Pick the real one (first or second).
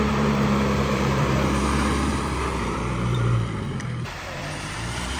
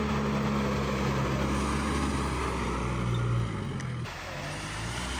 second